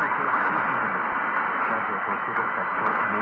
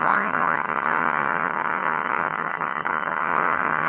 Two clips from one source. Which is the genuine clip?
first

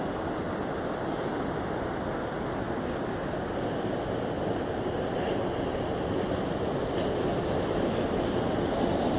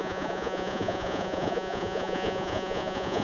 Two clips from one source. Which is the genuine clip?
first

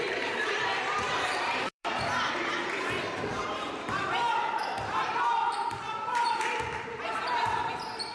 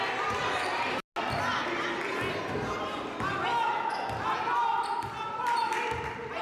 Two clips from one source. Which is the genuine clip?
second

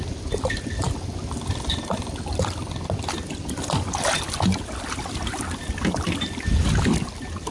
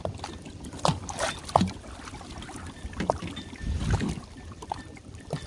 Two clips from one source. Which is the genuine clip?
first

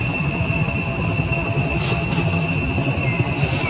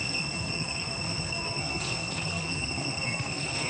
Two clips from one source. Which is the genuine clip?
first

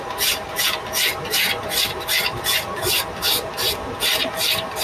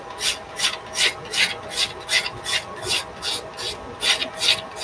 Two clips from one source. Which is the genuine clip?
second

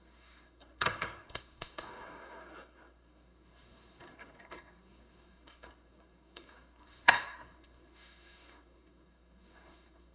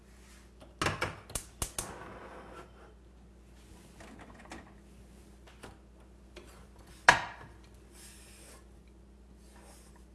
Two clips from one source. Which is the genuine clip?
second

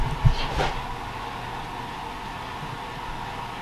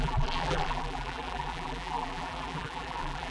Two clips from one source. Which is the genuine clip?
first